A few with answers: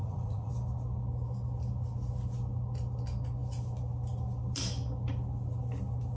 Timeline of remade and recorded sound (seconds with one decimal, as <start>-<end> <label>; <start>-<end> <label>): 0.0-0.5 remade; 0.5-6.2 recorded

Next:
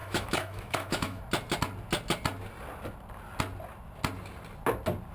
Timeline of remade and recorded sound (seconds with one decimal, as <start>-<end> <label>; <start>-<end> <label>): 0.0-1.2 remade; 1.2-5.1 recorded

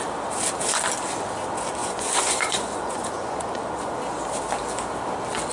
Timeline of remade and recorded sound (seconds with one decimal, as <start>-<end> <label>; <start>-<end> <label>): 0.0-1.8 recorded; 1.8-3.9 remade; 3.9-5.5 recorded